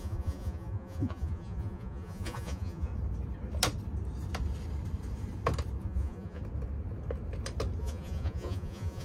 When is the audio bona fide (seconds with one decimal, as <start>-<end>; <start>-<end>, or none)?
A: 2.9-5.8; 6.4-7.8